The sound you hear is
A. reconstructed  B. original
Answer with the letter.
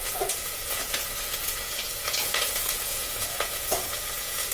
A